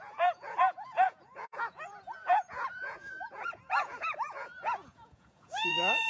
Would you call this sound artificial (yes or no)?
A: yes